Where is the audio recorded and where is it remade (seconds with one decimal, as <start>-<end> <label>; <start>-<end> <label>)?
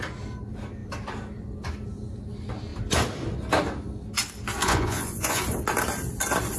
0.0-4.6 recorded; 4.6-5.4 remade; 5.4-6.6 recorded